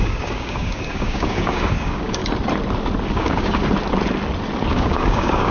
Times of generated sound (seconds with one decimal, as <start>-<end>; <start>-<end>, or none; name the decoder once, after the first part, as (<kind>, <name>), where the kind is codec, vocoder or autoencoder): 0.0-2.2 (codec, DAC); 3.1-3.6; 4.7-5.5